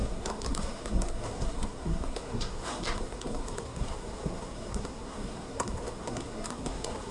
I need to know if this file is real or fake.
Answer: fake